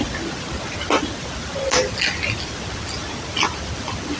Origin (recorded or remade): recorded